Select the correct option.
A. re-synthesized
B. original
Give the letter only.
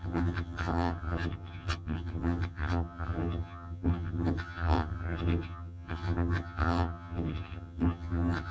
A